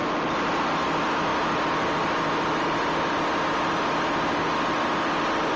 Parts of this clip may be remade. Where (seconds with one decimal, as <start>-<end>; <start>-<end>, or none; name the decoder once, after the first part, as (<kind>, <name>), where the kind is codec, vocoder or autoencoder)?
none